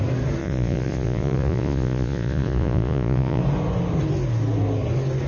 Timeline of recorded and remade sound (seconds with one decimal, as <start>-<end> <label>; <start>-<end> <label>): 0.0-0.4 recorded; 0.4-3.4 remade; 3.4-5.3 recorded